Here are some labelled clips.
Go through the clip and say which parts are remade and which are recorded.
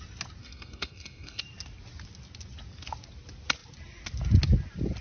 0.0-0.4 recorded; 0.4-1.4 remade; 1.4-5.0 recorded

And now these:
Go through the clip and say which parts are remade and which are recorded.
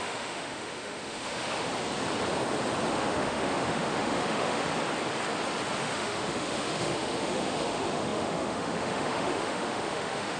0.0-1.7 remade; 1.7-2.9 recorded; 2.9-4.7 remade; 4.7-5.8 recorded; 5.8-10.4 remade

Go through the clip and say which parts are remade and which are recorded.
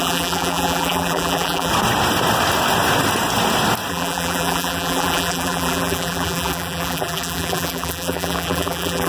0.0-1.7 remade; 1.7-3.9 recorded; 3.9-9.1 remade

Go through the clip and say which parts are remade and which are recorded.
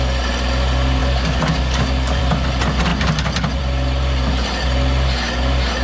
0.0-1.0 recorded; 1.0-2.2 remade; 2.2-5.8 recorded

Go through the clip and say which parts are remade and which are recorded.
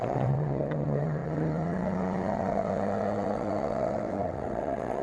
0.0-5.0 remade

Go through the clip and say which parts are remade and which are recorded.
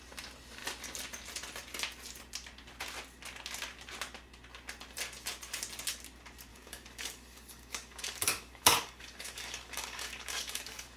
0.0-6.5 recorded; 6.5-11.0 remade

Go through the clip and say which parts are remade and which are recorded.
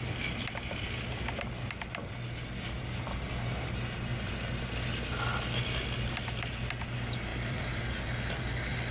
0.0-7.3 recorded; 7.3-7.8 remade; 7.8-8.9 recorded